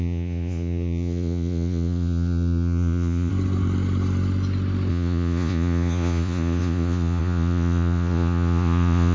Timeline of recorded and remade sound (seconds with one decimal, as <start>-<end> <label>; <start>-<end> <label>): 0.0-3.3 remade; 3.3-4.9 recorded; 4.9-9.1 remade